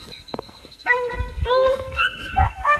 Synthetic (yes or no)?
yes